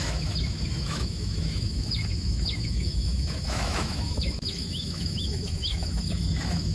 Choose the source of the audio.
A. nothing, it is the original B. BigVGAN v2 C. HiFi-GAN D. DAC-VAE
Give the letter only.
D